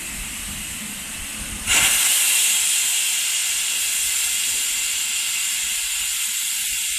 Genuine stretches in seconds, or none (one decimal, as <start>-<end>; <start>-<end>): 0.0-7.0